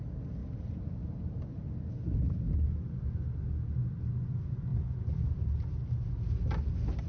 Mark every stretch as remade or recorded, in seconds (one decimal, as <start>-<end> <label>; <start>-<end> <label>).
0.0-7.1 recorded